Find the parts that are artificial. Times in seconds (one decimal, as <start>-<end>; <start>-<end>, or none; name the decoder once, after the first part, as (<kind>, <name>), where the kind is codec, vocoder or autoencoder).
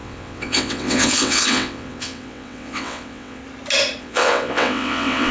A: 0.0-3.4 (vocoder, WaveNeXt); 4.0-5.3